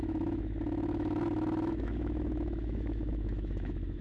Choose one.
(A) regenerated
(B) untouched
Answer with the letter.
A